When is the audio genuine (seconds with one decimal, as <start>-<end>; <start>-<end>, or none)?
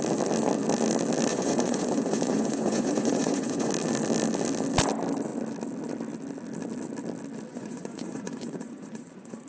0.0-1.3; 3.7-7.5